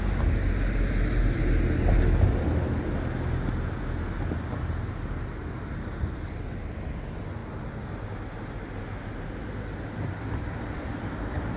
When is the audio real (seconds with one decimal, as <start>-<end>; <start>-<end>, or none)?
0.0-11.6